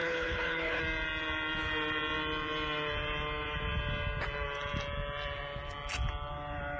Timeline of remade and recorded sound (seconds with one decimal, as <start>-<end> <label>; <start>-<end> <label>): 0.0-0.8 remade; 0.8-6.8 recorded